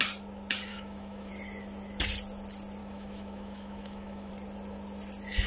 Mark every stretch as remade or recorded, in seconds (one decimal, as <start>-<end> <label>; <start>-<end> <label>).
0.0-0.7 recorded; 0.7-1.3 remade; 1.3-2.8 recorded; 2.8-4.3 remade; 4.3-5.5 recorded